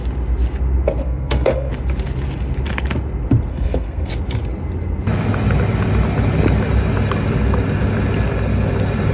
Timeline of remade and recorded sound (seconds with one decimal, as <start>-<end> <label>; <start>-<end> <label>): 0.0-1.0 recorded; 1.0-1.7 remade; 1.7-3.5 recorded; 3.5-4.1 remade; 4.1-9.1 recorded